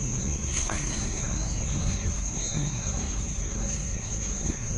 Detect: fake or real fake